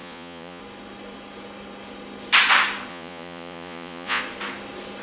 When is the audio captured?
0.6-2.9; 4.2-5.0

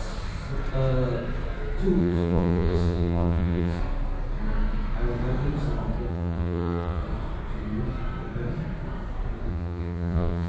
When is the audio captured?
0.0-2.0; 3.8-6.1; 7.0-9.5

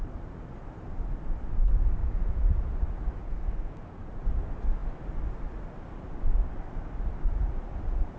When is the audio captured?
0.0-2.0; 2.7-3.2; 4.2-8.2

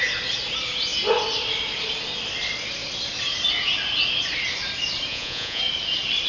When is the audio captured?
0.0-5.1; 5.6-6.3

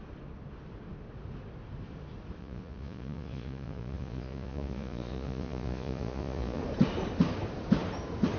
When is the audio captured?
0.0-2.4; 6.6-8.4

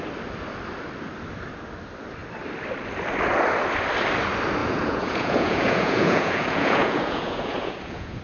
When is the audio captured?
0.0-4.6

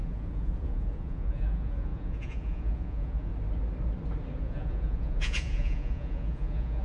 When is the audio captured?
3.3-4.4